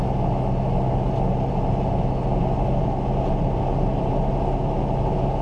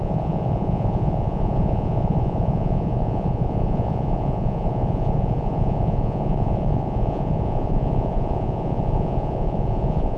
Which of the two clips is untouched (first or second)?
first